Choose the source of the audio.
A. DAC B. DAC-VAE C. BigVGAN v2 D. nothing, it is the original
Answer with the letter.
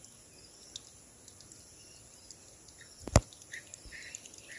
D